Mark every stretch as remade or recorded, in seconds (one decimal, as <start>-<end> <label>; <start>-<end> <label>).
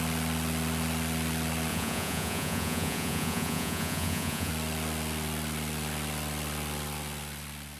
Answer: 0.0-1.7 recorded; 1.7-4.5 remade; 4.5-7.8 recorded